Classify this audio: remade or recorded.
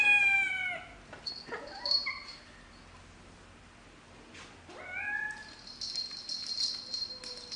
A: recorded